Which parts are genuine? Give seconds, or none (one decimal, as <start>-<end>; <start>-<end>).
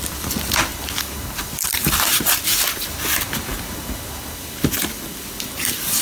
none